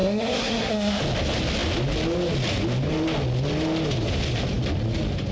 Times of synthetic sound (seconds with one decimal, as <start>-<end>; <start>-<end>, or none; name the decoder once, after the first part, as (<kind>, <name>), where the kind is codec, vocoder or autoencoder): 0.0-1.0 (codec, SNAC)